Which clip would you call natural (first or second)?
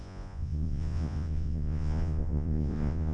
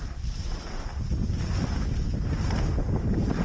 second